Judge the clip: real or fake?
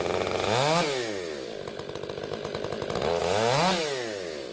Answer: real